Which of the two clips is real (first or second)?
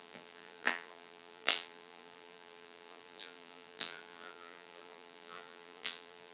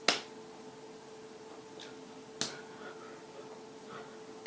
second